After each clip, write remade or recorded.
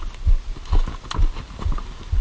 recorded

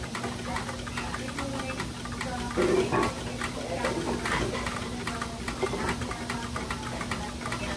recorded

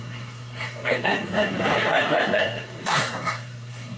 remade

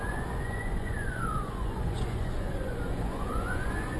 remade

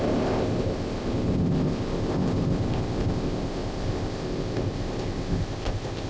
remade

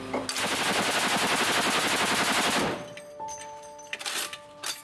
recorded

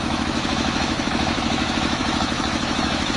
remade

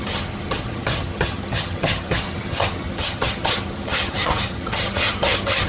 remade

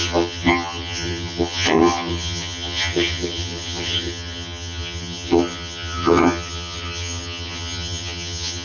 remade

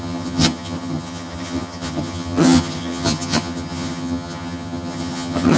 remade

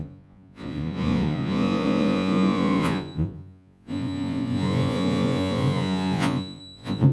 remade